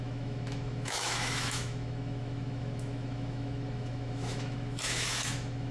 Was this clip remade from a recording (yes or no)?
yes